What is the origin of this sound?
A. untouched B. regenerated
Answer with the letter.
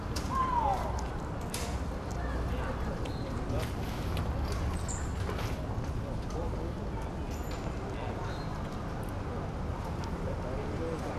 A